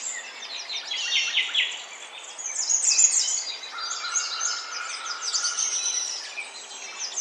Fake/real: real